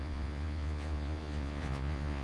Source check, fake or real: fake